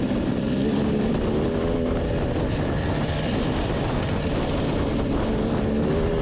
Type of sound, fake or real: real